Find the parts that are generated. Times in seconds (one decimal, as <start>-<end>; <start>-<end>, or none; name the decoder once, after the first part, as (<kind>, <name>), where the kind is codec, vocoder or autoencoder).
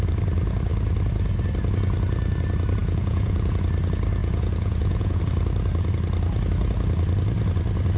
2.8-3.6 (vocoder, Vocos); 4.2-5.2